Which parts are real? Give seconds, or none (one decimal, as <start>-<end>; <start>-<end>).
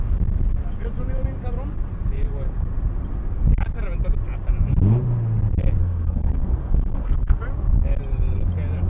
0.0-5.8; 7.4-8.9